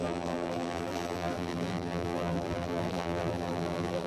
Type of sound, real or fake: fake